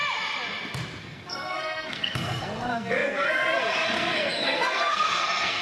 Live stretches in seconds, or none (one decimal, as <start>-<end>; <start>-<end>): 0.0-1.0